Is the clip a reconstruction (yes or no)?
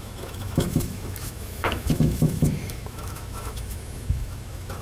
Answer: yes